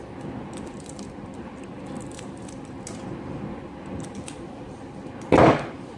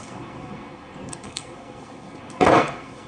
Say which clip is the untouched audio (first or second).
first